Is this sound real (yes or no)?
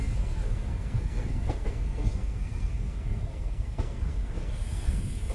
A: no